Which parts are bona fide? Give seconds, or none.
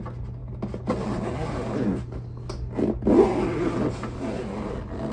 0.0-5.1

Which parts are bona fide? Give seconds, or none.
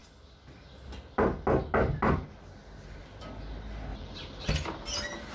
0.0-3.9; 4.5-5.3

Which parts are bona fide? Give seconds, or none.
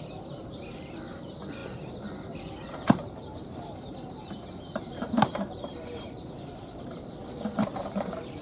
none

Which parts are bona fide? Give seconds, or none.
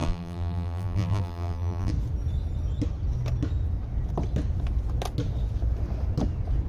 1.9-6.7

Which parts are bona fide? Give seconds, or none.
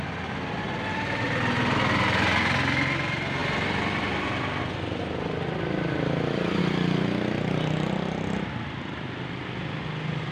0.0-10.3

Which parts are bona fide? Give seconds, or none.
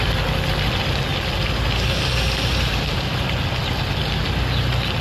0.0-5.0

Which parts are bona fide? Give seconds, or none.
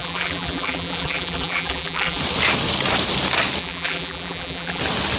2.2-3.6; 4.8-5.2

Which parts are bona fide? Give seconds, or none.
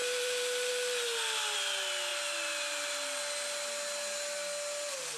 0.7-5.2